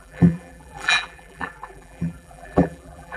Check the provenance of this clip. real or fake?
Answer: fake